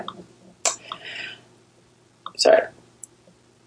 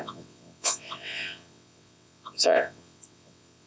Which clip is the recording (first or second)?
first